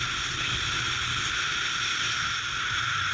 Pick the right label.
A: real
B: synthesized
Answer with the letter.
A